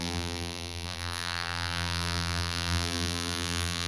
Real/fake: fake